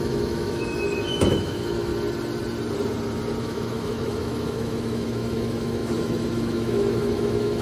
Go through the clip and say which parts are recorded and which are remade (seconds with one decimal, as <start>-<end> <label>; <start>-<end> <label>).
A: 0.0-1.9 remade; 1.9-3.4 recorded; 3.4-7.6 remade